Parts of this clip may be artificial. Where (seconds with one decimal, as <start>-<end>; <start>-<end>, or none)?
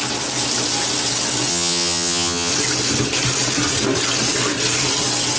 1.5-2.5